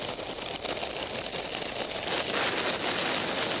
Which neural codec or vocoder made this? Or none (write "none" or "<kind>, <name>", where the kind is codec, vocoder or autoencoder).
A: none